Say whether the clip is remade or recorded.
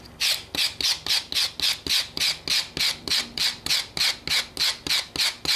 recorded